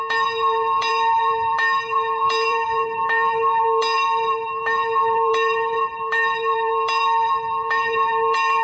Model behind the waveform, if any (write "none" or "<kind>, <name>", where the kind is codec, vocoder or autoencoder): vocoder, BigVGAN v2